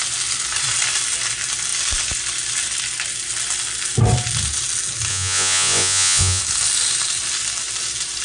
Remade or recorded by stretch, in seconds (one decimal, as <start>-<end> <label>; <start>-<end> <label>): 0.0-5.1 recorded; 5.1-6.4 remade; 6.4-8.2 recorded